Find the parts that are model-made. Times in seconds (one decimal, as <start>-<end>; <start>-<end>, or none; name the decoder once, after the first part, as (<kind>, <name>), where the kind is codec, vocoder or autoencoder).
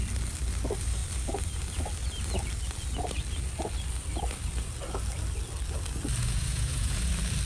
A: 6.2-7.1 (vocoder, Vocos)